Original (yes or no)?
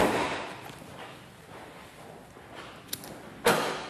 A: yes